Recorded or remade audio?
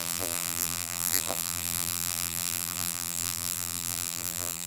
remade